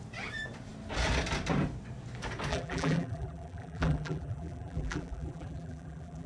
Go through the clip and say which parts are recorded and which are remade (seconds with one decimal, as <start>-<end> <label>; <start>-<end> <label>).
0.0-2.5 recorded; 2.5-6.3 remade